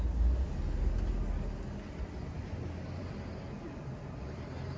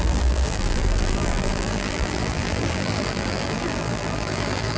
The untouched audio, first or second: first